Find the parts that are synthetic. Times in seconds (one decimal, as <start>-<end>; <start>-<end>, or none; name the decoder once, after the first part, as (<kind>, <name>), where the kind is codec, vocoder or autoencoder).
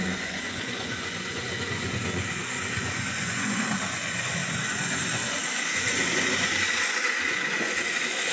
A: 0.0-8.3 (vocoder, Vocos)